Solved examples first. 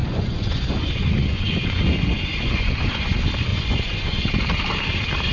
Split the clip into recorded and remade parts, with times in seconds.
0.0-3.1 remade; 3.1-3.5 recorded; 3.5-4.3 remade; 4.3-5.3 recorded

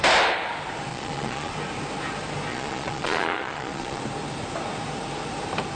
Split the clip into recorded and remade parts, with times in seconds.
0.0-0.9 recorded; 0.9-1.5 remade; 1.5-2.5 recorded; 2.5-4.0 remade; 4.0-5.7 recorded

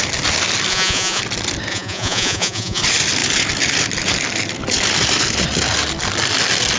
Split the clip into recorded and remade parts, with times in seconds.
0.0-0.7 recorded; 0.7-1.2 remade; 1.2-1.7 recorded; 1.7-2.8 remade; 2.8-6.8 recorded

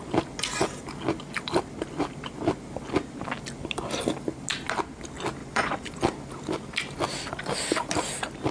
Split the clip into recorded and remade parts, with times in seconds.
0.0-5.4 recorded; 5.4-6.0 remade; 6.0-8.5 recorded

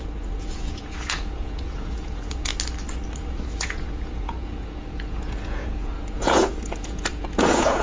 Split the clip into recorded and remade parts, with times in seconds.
0.0-2.5 remade; 2.5-3.2 recorded; 3.2-7.8 remade

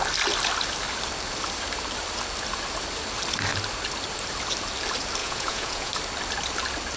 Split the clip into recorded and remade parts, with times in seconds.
0.0-5.2 recorded; 5.2-5.9 remade; 5.9-7.0 recorded

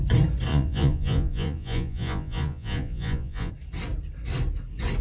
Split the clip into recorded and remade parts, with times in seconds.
0.0-0.5 recorded; 0.5-3.5 remade; 3.5-5.0 recorded

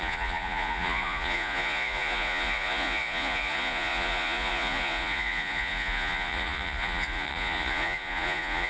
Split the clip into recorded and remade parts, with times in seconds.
0.0-8.7 remade